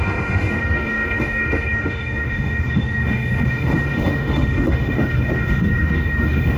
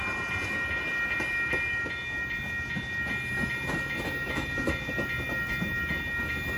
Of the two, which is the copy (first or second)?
first